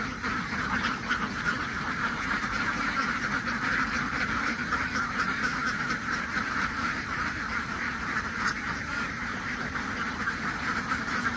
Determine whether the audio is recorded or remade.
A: remade